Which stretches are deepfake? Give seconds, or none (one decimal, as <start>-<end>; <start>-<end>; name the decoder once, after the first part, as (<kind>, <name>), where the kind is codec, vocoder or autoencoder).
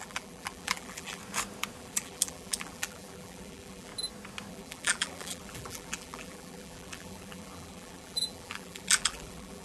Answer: 0.0-1.2 (vocoder, BigVGAN v2); 1.8-3.9; 4.5-9.6